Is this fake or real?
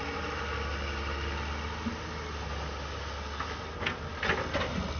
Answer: real